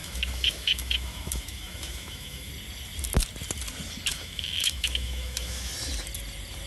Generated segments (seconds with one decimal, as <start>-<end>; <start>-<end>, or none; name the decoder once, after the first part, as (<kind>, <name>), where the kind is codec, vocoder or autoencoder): 0.0-2.5 (autoencoder, DAC-VAE); 4.1-5.7